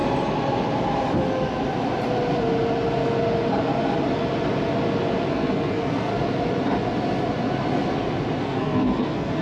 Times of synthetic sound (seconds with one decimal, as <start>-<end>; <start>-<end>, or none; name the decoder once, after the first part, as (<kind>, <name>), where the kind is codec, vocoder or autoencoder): 5.3-6.1 (codec, SNAC); 8.4-9.4